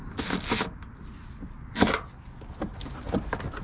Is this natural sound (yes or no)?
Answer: yes